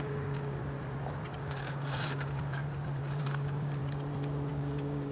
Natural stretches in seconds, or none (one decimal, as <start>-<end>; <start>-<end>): 0.6-1.3; 2.6-3.2; 3.8-4.5